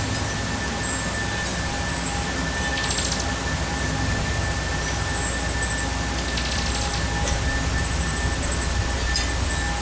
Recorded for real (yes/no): yes